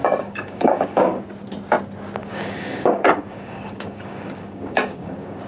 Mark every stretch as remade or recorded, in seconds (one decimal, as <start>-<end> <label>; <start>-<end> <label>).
0.0-1.2 remade; 1.2-2.2 recorded; 2.2-5.5 remade